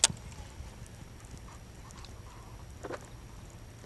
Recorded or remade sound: recorded